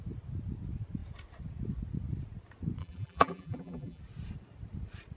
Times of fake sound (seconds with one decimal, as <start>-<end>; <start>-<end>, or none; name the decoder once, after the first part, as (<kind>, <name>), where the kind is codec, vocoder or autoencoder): 2.8-4.0 (vocoder, BigVGAN v2)